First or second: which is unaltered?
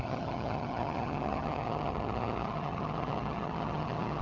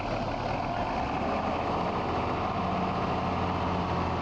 second